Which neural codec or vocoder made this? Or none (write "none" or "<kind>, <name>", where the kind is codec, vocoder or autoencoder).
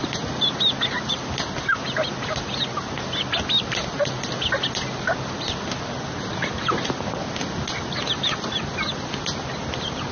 none